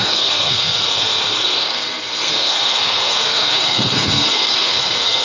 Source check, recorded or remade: remade